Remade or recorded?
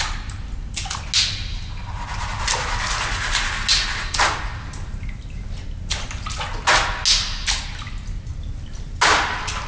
recorded